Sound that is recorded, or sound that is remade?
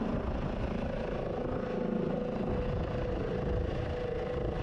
recorded